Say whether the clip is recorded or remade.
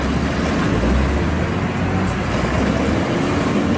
recorded